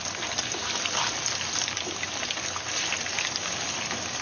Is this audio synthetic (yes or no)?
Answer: no